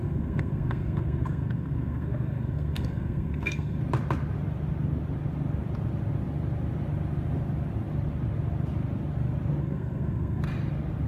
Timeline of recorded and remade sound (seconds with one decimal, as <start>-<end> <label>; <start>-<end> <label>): 0.0-3.8 remade; 3.8-9.6 recorded; 9.6-10.4 remade; 10.4-11.1 recorded